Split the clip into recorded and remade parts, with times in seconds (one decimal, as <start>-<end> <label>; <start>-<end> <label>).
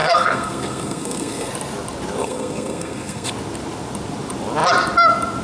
0.0-1.5 remade; 1.5-2.2 recorded; 2.2-3.3 remade; 3.3-5.4 recorded